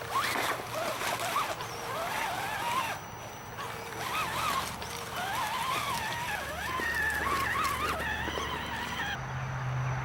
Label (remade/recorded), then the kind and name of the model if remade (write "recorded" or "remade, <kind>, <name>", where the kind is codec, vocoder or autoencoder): recorded